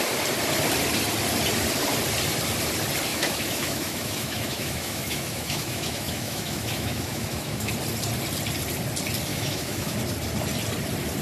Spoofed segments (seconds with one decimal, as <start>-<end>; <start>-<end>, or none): 3.1-7.7; 9.3-10.0